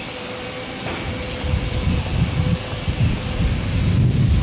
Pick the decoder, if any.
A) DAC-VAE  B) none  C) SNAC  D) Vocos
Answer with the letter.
B